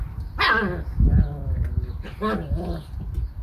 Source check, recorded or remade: recorded